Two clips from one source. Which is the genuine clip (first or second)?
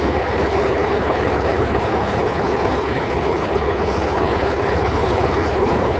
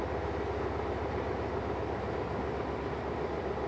second